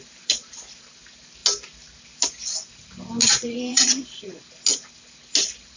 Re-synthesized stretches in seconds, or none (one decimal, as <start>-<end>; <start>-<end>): 3.2-4.4